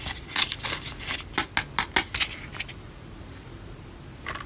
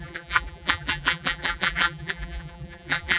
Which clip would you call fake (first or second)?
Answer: second